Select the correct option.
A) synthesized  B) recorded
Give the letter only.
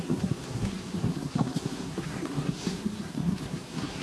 A